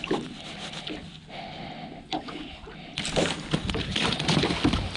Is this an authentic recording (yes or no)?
yes